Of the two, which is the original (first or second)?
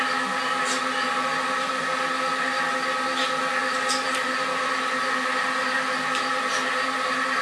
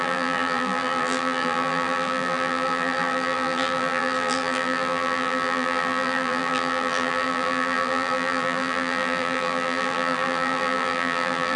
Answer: first